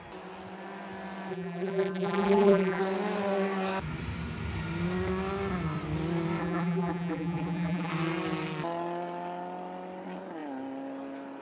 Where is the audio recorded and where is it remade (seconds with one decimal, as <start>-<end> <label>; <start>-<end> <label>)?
0.0-1.3 recorded; 1.3-2.8 remade; 2.8-6.4 recorded; 6.4-7.9 remade; 7.9-11.4 recorded